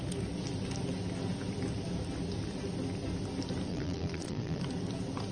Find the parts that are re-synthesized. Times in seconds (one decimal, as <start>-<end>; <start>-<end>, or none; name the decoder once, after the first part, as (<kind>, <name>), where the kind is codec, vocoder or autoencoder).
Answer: 3.7-4.6 (vocoder, Vocos)